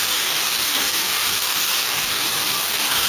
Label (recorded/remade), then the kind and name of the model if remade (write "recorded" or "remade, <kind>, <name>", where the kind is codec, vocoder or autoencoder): remade, codec, DAC